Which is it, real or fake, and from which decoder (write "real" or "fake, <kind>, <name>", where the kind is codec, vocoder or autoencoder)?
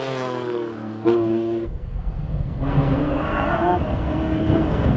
fake, codec, SNAC